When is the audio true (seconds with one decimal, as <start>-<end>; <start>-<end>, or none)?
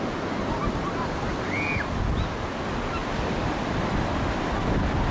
0.0-3.0; 3.8-5.1